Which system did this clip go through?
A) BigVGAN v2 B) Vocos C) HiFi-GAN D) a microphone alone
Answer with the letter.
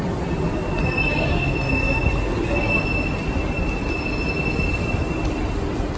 D